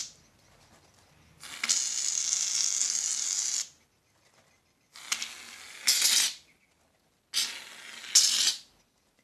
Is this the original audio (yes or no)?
yes